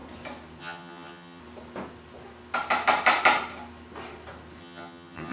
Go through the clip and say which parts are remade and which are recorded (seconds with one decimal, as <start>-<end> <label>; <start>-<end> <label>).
0.0-0.6 recorded; 0.6-1.4 remade; 1.4-4.6 recorded; 4.6-5.3 remade